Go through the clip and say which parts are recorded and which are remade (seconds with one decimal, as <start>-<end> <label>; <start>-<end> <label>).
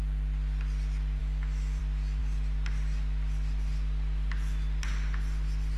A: 0.0-1.2 recorded; 1.2-1.8 remade; 1.8-5.8 recorded